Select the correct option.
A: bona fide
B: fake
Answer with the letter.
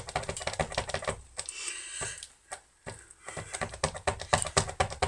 A